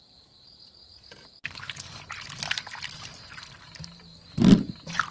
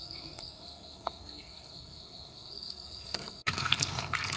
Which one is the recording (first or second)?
first